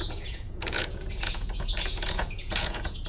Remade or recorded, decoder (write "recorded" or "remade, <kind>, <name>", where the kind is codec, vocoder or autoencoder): remade, vocoder, Vocos